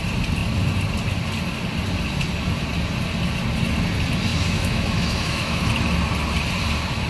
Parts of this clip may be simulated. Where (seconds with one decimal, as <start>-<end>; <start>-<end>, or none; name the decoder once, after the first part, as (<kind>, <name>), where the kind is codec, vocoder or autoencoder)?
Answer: 4.3-5.7 (autoencoder, DAC-VAE)